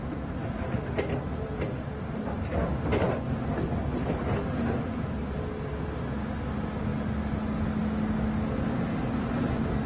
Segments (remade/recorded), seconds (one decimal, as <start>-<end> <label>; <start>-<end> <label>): 0.0-9.9 recorded